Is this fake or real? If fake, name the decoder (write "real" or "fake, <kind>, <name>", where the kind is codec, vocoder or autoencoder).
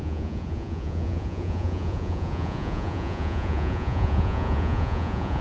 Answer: fake, vocoder, Vocos